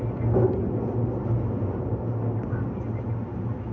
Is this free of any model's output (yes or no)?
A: yes